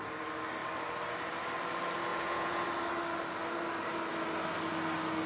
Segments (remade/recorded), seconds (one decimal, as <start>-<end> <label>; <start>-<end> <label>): 0.0-2.1 recorded; 2.1-2.6 remade; 2.6-5.3 recorded